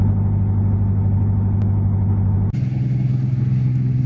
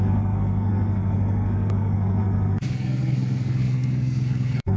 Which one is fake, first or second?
second